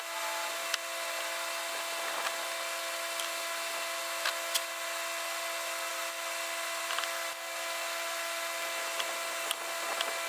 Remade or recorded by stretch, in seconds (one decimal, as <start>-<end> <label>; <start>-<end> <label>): 0.0-10.3 recorded